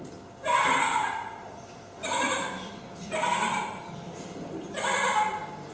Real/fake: real